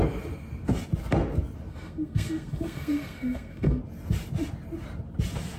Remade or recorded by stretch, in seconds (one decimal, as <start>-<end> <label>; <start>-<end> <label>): 0.0-1.7 recorded; 1.7-3.8 remade; 3.8-5.6 recorded